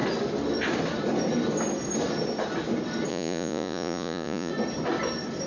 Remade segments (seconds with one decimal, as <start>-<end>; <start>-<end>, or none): 3.1-4.5